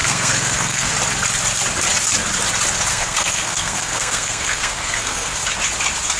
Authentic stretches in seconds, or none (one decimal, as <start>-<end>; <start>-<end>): 0.9-2.9; 5.3-6.2